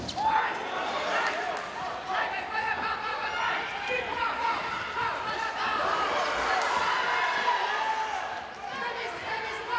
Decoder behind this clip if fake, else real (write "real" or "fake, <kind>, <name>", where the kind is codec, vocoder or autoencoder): real